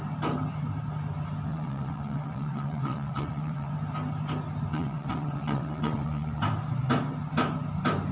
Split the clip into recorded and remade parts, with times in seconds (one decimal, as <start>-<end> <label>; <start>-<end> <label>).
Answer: 0.0-1.5 recorded; 1.5-3.7 remade; 3.7-4.7 recorded; 4.7-6.4 remade; 6.4-8.1 recorded